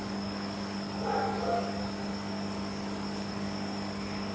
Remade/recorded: remade